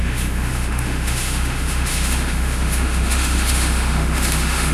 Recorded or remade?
remade